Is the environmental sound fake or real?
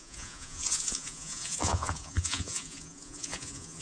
fake